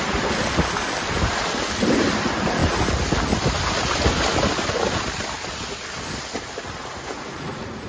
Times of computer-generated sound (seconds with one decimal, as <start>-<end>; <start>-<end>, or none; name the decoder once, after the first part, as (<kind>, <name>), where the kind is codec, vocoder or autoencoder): 6.8-7.9 (vocoder, Vocos)